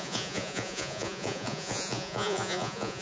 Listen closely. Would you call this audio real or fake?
fake